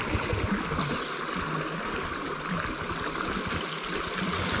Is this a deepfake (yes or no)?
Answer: no